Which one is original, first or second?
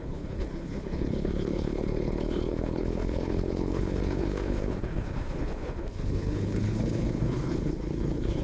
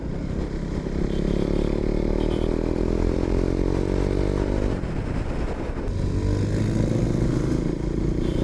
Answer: second